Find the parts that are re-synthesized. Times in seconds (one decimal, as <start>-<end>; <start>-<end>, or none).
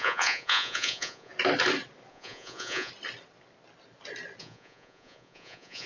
0.0-1.3; 2.1-2.9; 4.4-5.9